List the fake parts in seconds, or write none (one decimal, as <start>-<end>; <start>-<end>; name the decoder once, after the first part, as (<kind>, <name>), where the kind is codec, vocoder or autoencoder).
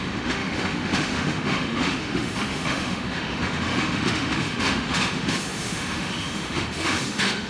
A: 0.0-7.5 (autoencoder, DAC-VAE)